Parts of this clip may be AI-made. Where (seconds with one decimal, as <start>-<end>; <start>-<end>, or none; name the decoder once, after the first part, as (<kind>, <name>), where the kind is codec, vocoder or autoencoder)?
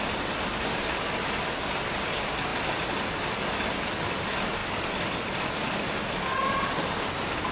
4.6-5.4 (vocoder, BigVGAN v2)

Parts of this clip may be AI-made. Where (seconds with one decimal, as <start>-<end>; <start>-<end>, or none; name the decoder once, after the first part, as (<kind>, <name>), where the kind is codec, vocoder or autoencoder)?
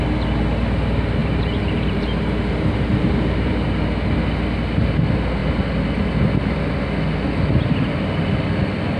1.2-3.5 (vocoder, BigVGAN v2)